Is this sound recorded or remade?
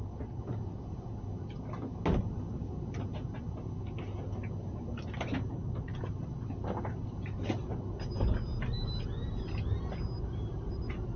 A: recorded